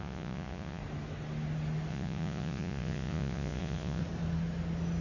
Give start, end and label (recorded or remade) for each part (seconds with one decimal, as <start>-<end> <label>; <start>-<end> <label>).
0.0-0.8 remade; 0.8-1.9 recorded; 1.9-4.0 remade; 4.0-5.0 recorded